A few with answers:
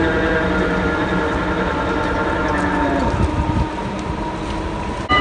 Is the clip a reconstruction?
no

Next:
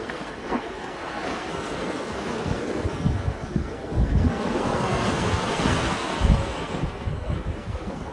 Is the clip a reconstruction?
yes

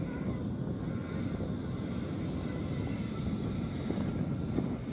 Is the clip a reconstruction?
no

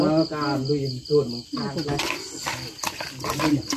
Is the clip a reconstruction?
no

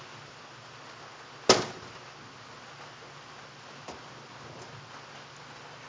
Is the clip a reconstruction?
no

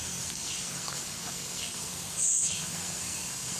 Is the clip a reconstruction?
yes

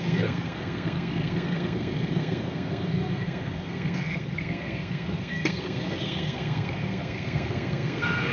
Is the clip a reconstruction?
yes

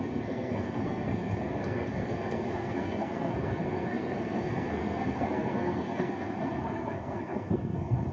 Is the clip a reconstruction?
yes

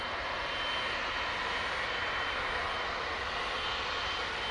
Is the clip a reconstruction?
no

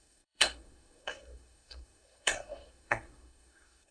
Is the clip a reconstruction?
yes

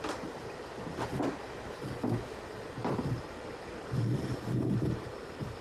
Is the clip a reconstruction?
no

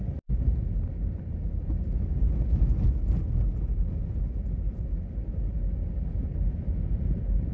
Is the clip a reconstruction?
no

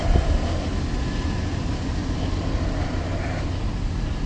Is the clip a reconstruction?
no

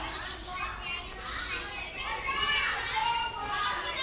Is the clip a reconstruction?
no